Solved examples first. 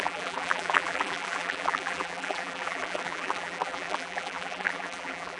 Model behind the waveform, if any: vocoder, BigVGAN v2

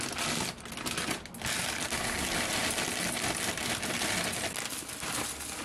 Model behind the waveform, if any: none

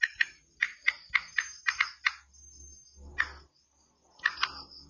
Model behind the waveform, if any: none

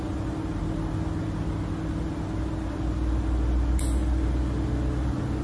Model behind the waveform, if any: none